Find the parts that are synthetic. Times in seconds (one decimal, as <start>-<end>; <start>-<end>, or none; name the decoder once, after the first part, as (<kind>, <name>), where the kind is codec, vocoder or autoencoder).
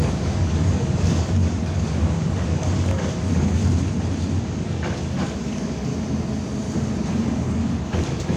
0.0-3.6 (codec, DAC); 4.4-5.9; 7.1-8.4